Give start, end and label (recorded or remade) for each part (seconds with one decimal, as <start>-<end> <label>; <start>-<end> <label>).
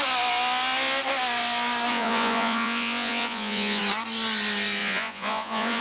0.0-1.9 recorded; 1.9-3.8 remade; 3.8-4.8 recorded; 4.8-5.8 remade